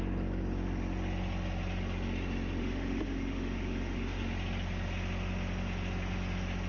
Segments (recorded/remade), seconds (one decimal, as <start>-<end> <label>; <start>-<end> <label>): 0.0-2.6 recorded; 2.6-4.2 remade; 4.2-6.7 recorded